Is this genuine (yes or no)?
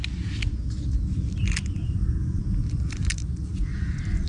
yes